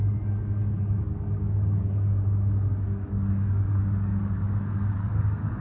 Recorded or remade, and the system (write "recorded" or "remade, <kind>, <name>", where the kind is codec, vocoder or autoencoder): remade, codec, DAC